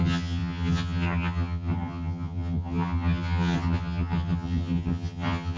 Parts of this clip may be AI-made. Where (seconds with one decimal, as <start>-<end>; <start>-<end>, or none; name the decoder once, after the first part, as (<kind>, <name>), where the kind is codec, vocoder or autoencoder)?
0.0-5.6 (vocoder, HiFi-GAN)